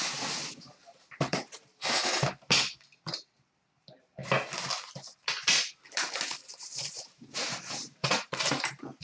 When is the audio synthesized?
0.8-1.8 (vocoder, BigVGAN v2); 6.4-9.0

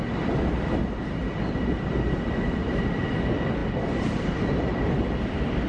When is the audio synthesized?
none

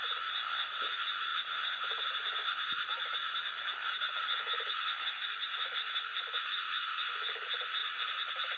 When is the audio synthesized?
7.8-8.6 (vocoder, BigVGAN v2)

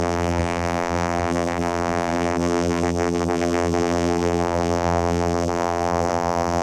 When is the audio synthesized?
0.0-6.6 (vocoder, BigVGAN v2)